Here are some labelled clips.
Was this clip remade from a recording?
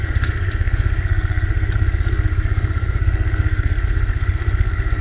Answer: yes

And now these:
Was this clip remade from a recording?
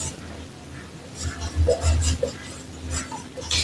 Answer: no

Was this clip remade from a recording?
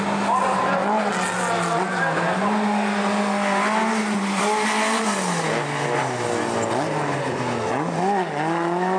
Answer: no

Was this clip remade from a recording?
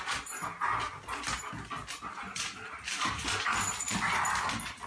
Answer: no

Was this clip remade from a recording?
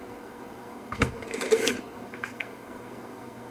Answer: yes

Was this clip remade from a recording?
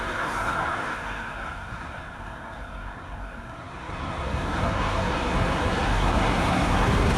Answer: yes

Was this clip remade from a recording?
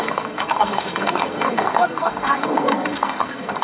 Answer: yes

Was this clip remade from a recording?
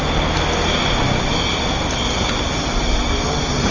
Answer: no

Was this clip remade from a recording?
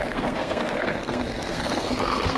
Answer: yes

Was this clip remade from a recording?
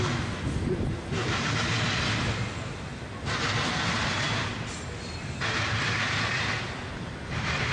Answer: no